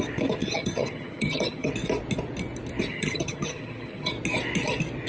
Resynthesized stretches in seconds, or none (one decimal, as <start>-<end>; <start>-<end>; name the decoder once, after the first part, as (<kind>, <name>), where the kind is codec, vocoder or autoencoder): 0.4-1.7 (vocoder, HiFi-GAN); 2.9-4.1